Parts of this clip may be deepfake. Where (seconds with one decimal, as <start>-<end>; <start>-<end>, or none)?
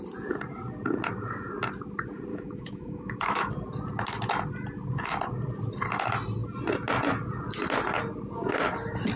2.3-3.5